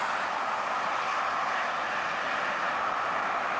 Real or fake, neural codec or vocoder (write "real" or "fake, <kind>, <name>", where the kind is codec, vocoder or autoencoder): real